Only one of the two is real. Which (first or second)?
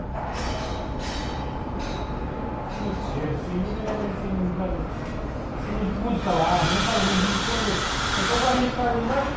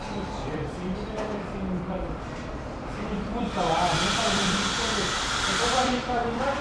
first